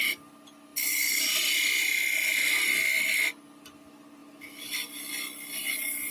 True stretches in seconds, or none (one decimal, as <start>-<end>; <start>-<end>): 0.0-6.1